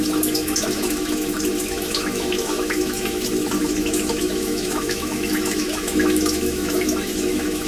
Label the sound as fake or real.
fake